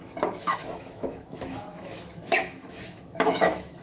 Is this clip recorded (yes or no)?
no